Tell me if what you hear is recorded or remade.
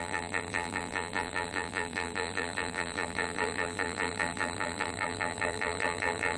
remade